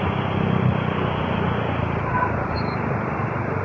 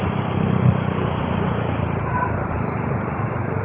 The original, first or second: first